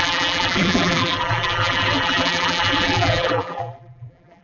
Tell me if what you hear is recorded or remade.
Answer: remade